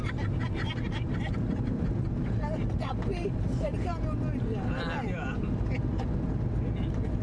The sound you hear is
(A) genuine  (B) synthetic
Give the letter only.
A